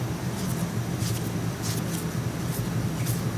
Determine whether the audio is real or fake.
real